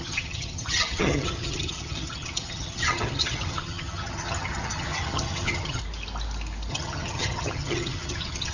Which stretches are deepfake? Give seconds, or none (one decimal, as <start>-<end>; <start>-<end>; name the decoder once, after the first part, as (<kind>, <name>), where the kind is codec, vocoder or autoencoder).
0.0-5.8 (vocoder, HiFi-GAN); 6.7-8.5